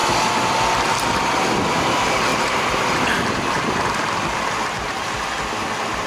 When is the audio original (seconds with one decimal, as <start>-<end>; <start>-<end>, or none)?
0.0-2.3; 5.1-6.1